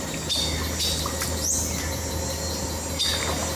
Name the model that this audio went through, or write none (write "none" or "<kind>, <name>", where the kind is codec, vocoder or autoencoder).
none